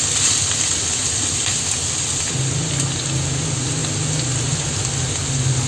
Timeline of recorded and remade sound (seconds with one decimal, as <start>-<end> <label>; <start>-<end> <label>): 0.0-5.7 recorded